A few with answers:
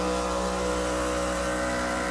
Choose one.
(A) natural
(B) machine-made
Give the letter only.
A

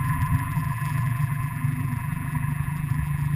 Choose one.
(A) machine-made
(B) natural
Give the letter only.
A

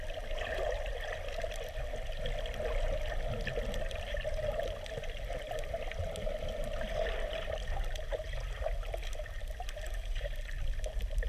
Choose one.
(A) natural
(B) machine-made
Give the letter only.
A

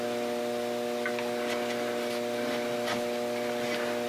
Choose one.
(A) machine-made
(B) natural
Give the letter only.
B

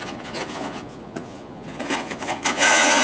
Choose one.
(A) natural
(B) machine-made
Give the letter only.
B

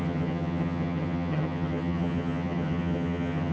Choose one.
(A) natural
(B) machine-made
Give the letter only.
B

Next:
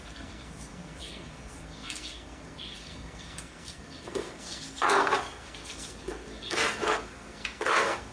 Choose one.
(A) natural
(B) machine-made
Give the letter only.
B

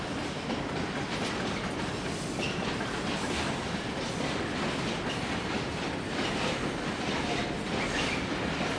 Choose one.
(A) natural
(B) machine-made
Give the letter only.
A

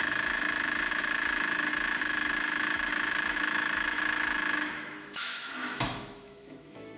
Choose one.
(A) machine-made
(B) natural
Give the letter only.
A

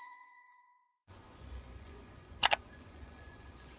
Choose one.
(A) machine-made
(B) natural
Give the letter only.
A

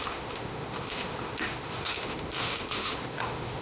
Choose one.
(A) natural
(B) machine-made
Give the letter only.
B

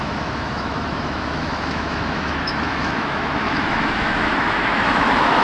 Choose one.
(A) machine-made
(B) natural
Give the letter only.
A